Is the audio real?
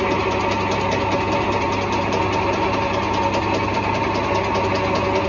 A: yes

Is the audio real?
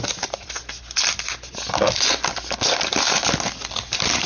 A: yes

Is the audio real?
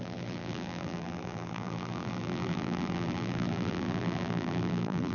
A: no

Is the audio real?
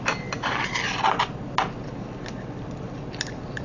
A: yes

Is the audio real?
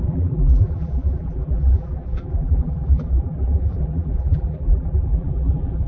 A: no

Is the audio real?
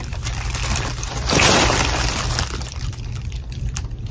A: no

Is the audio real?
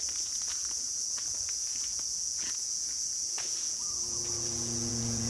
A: no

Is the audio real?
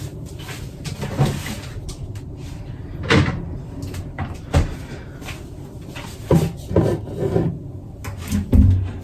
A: yes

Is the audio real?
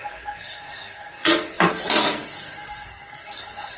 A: no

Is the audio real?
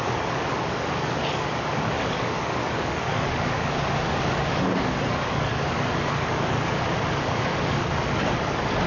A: no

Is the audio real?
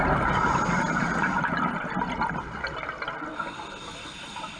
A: yes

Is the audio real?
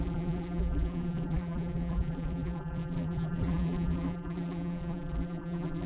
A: no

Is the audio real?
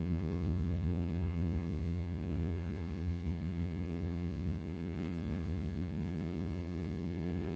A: no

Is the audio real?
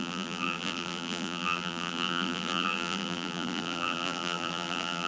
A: no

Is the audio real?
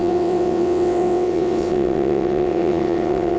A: no